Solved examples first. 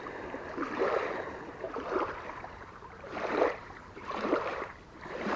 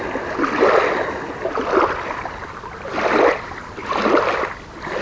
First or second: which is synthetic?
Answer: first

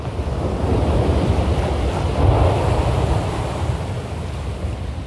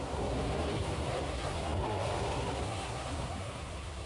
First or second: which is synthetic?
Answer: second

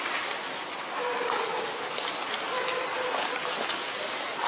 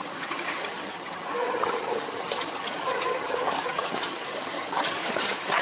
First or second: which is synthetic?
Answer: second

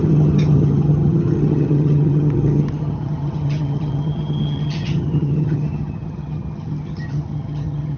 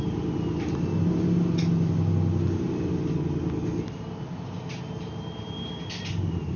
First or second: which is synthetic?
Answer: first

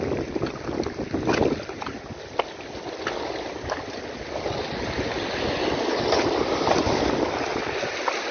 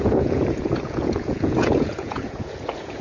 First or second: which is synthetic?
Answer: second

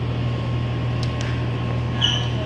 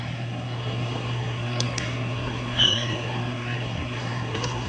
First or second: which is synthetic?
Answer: second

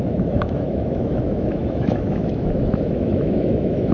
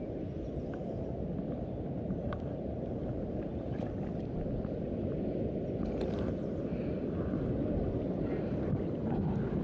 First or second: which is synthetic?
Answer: first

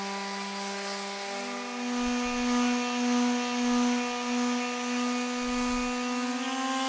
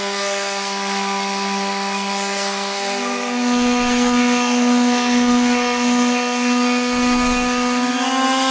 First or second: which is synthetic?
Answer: second